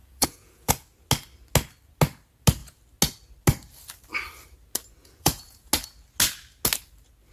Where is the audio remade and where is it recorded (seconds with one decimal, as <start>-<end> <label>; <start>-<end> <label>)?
0.0-0.7 remade; 0.7-5.0 recorded; 5.0-5.7 remade; 5.7-7.3 recorded